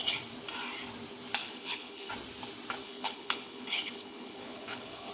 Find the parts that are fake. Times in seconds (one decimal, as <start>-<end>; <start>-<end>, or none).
1.4-2.1; 2.8-5.1

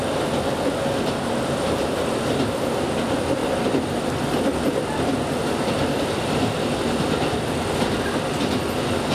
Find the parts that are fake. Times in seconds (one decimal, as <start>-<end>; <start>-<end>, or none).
3.4-6.8

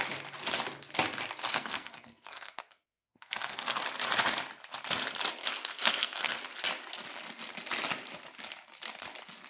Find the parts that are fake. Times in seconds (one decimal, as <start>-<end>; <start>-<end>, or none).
1.5-3.8; 5.4-6.4

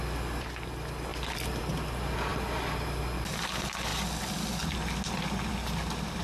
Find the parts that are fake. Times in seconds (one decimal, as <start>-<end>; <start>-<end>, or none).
1.1-1.6; 2.3-3.0

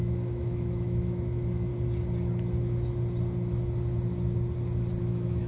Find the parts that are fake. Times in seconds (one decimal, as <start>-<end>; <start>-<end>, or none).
0.0-1.7; 5.0-5.5

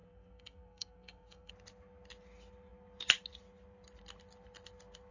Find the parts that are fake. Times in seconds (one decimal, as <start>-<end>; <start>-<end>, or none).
0.0-1.5

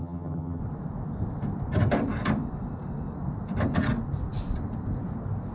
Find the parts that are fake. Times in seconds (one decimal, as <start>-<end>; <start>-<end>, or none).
0.0-0.6

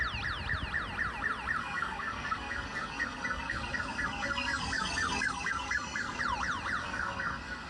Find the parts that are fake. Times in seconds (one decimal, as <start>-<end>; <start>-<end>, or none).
1.6-6.2; 6.8-7.7